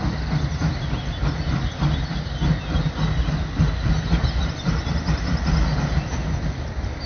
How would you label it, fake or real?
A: real